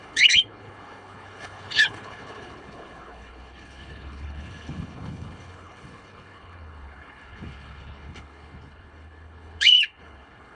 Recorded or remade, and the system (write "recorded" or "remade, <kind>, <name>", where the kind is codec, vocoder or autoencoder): remade, codec, HILCodec